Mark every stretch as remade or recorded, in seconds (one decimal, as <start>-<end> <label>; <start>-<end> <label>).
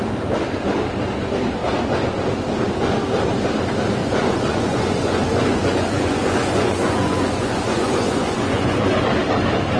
0.0-4.0 recorded; 4.0-9.0 remade; 9.0-9.8 recorded